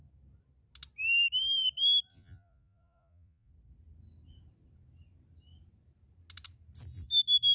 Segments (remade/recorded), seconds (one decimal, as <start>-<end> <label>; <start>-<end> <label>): 0.0-2.1 recorded; 2.1-3.5 remade; 3.5-7.5 recorded